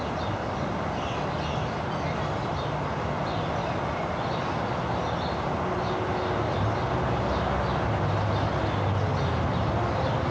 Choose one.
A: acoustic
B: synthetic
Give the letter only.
A